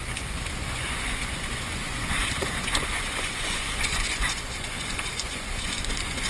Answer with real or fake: fake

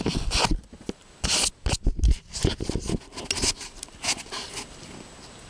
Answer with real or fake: real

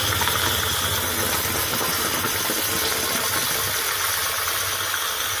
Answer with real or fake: real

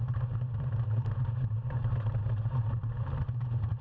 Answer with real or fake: fake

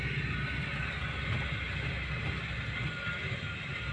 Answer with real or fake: real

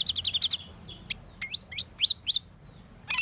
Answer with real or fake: real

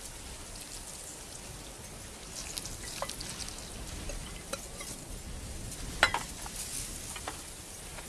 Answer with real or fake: real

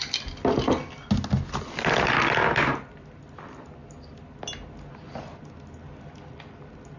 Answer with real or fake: real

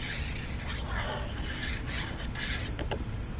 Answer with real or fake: real